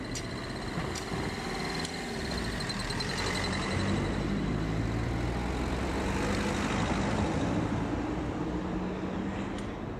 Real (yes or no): yes